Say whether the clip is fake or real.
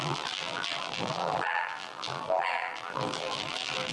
fake